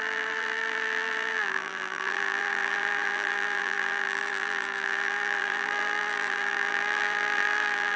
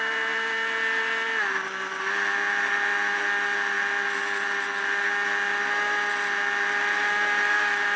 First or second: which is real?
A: second